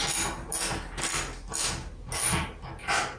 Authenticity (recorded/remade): recorded